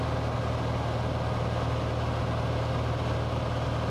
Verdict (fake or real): real